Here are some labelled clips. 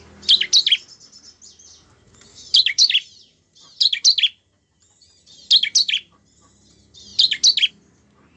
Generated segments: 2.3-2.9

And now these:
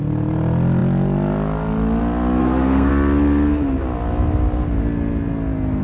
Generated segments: 2.4-2.9

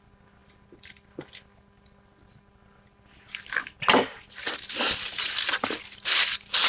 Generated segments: none